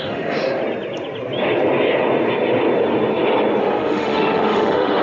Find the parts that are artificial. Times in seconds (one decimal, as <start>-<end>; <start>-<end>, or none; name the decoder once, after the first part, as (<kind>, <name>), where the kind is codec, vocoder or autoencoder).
0.0-0.6 (autoencoder, DAC-VAE); 3.6-5.0